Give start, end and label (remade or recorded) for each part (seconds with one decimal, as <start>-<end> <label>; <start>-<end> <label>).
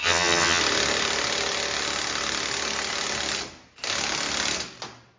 0.0-0.6 remade; 0.6-5.2 recorded